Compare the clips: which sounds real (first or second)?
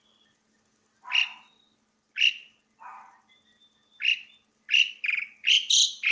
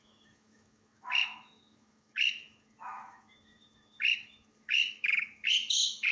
first